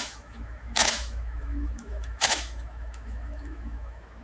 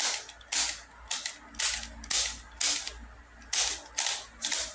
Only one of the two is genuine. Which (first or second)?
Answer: second